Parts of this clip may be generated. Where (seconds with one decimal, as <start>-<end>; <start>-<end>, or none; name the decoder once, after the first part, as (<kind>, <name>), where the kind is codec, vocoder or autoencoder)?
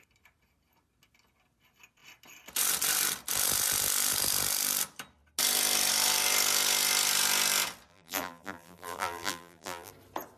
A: 7.9-9.9 (vocoder, BigVGAN v2)